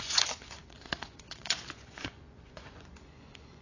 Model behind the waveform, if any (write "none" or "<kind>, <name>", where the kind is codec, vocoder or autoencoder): vocoder, Vocos